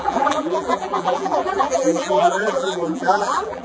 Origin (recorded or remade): remade